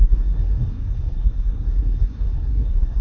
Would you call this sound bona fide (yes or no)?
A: no